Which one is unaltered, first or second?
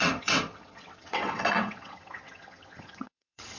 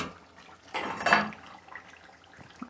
second